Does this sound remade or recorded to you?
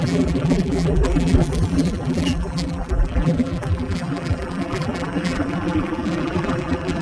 remade